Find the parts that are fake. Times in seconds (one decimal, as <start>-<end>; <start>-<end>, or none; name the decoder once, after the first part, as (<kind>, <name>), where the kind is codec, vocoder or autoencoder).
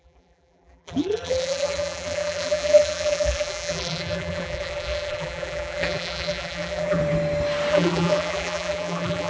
0.0-7.0 (vocoder, BigVGAN v2); 7.7-9.3